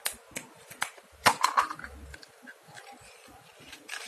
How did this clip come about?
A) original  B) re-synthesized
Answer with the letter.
A